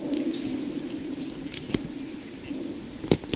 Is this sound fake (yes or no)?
no